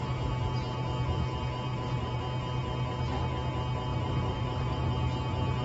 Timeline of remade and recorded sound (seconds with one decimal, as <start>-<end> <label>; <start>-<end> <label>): 0.0-1.7 recorded; 1.7-2.2 remade; 2.2-3.9 recorded; 3.9-4.9 remade; 4.9-5.6 recorded

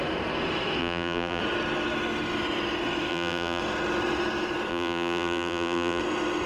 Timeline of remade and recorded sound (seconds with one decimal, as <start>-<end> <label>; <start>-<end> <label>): 0.0-0.8 recorded; 0.8-1.4 remade; 1.4-3.1 recorded; 3.1-3.6 remade; 3.6-4.7 recorded; 4.7-6.0 remade; 6.0-6.5 recorded

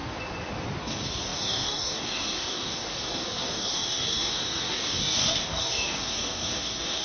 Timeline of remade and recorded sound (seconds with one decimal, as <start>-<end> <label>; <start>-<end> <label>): 0.0-0.8 recorded; 0.8-7.0 remade